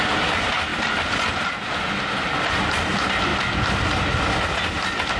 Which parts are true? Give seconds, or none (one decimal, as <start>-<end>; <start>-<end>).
0.0-5.2